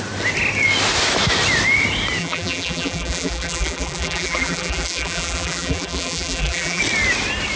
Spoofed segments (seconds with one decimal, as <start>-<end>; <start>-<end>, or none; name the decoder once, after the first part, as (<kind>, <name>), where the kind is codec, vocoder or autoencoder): 2.2-6.8 (vocoder, BigVGAN v2)